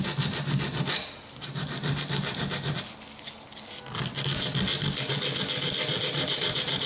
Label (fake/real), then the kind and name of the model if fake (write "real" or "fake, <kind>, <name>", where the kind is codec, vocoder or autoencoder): real